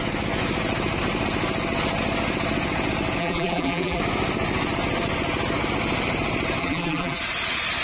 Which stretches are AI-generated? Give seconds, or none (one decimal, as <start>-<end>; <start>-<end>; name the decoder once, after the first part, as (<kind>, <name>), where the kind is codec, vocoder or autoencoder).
3.2-4.0 (vocoder, BigVGAN v2); 6.6-7.2